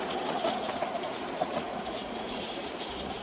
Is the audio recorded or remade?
remade